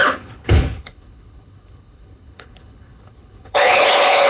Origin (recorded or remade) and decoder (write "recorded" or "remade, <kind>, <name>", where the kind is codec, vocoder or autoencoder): remade, codec, HILCodec